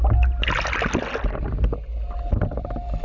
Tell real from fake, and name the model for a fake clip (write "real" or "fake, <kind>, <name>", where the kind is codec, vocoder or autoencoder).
real